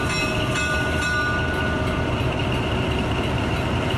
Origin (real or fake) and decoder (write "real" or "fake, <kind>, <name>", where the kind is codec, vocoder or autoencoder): real